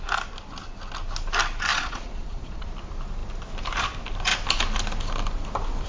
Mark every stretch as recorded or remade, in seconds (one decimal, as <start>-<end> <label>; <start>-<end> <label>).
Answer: 0.0-1.7 recorded; 1.7-2.7 remade; 2.7-5.9 recorded